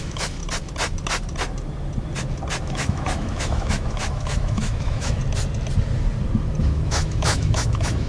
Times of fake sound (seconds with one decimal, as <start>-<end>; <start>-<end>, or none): 0.0-0.4; 2.6-5.2; 6.6-8.1